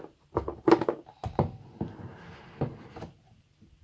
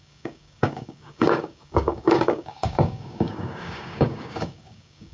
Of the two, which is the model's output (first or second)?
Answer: second